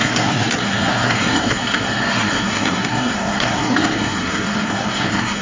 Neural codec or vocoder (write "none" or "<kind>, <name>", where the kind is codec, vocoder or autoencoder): codec, SNAC